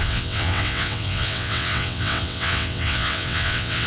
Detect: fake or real fake